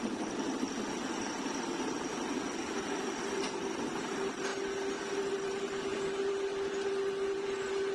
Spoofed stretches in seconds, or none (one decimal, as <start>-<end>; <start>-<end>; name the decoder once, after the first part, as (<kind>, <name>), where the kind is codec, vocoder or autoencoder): none